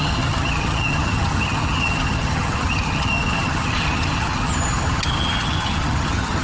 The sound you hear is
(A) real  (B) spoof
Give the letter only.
B